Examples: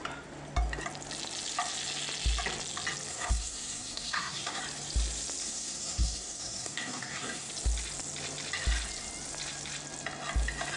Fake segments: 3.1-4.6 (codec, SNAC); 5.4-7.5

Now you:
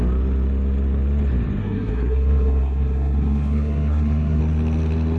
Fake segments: 1.6-4.4 (codec, SNAC)

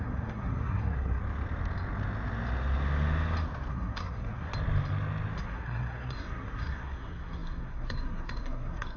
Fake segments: 0.0-1.2 (codec, SNAC); 3.7-4.5; 5.4-9.0

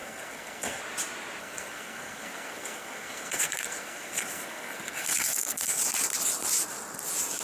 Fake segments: 0.0-0.8 (codec, SNAC); 1.4-5.8

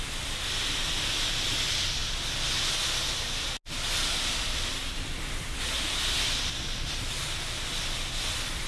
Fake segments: none